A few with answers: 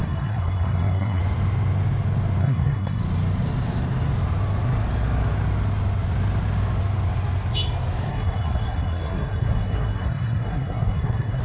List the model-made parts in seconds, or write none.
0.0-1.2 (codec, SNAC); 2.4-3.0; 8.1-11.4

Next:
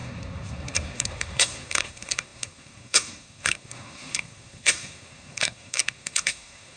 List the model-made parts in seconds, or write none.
0.0-6.8 (codec, SNAC)

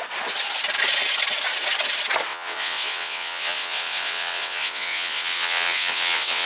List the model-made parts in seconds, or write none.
2.3-6.5 (vocoder, WaveNeXt)